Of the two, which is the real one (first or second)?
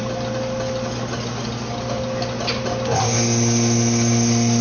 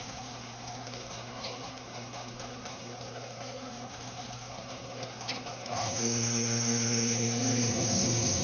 first